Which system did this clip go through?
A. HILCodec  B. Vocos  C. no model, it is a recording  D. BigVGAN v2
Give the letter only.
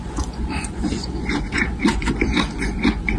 B